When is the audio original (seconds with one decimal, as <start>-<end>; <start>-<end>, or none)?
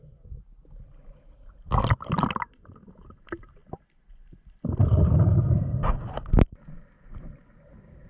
0.0-8.1